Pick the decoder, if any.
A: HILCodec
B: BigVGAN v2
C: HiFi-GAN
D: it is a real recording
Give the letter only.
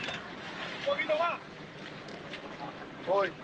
B